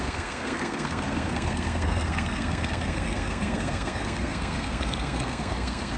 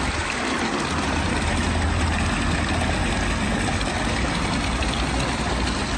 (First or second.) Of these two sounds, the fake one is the first